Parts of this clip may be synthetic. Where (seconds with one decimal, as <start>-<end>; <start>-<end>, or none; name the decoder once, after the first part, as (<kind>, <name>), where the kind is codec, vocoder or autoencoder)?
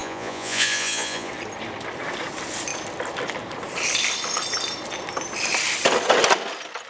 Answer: 0.0-1.3 (vocoder, Vocos)